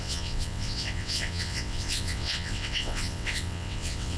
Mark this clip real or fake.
fake